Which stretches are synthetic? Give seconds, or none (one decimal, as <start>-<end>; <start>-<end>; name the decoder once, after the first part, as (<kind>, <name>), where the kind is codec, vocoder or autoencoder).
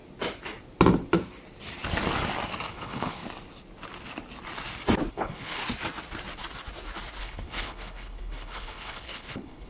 2.7-3.2 (codec, HILCodec); 5.1-5.6; 7.2-9.7